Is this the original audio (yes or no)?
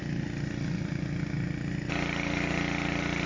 yes